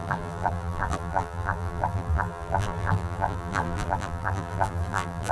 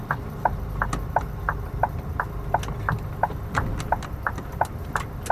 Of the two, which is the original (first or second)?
second